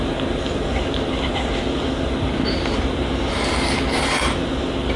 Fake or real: real